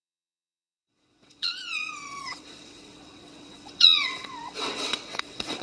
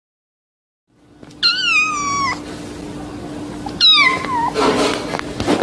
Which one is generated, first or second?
first